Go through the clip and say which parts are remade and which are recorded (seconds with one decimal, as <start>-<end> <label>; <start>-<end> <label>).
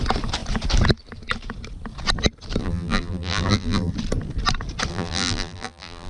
0.0-2.6 recorded; 2.6-3.9 remade; 3.9-4.9 recorded; 4.9-6.1 remade